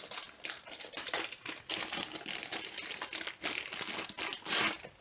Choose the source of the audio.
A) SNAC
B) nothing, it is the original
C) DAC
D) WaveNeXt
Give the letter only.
B